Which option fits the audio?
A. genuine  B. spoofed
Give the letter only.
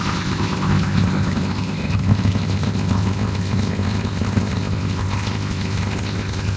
B